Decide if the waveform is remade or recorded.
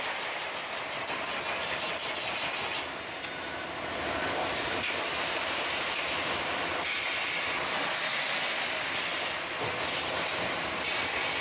recorded